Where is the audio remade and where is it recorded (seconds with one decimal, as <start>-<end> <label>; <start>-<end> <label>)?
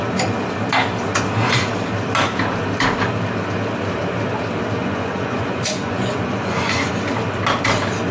0.0-4.8 recorded; 4.8-6.9 remade; 6.9-8.1 recorded